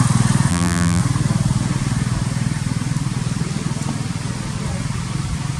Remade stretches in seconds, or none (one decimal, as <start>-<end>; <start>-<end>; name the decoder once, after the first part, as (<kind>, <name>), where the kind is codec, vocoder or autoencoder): 0.5-1.0 (vocoder, BigVGAN v2)